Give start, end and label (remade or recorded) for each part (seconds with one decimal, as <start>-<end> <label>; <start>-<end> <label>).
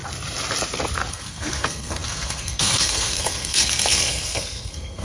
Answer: 0.0-1.1 recorded; 1.1-5.0 remade